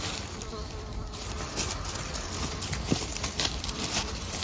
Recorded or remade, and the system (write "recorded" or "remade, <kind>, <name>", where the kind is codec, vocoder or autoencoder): recorded